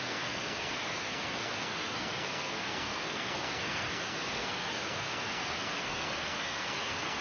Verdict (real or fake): fake